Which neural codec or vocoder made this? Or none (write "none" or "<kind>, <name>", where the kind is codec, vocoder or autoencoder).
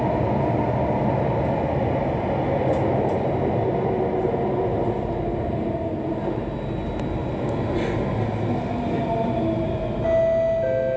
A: none